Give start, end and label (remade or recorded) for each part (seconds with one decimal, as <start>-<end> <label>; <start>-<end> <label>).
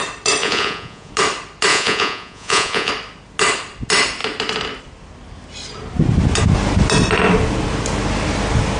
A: 0.0-0.4 recorded; 0.4-1.1 remade; 1.1-1.7 recorded; 1.7-2.9 remade; 2.9-8.8 recorded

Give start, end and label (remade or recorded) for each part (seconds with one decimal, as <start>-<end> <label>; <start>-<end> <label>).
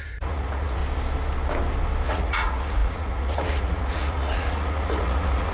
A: 0.0-0.8 remade; 0.8-2.1 recorded; 2.1-5.5 remade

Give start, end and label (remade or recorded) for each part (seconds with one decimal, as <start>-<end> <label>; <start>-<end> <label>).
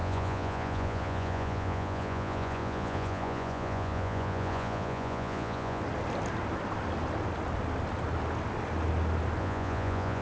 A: 0.0-5.8 remade; 5.8-9.4 recorded; 9.4-10.2 remade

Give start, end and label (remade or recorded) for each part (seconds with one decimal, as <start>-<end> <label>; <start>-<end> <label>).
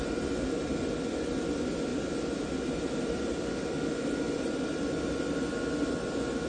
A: 0.0-6.5 recorded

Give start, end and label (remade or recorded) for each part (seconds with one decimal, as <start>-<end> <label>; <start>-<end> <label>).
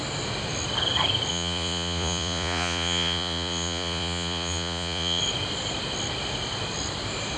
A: 0.0-1.3 recorded; 1.3-5.2 remade; 5.2-7.4 recorded